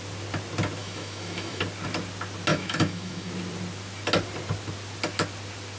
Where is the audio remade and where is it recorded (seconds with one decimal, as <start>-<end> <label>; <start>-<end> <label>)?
0.0-0.8 recorded; 0.8-1.6 remade; 1.6-2.5 recorded; 2.5-3.3 remade; 3.3-5.8 recorded